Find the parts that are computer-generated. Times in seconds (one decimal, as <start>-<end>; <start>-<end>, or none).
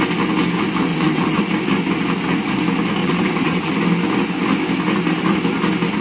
0.9-1.4; 3.0-3.7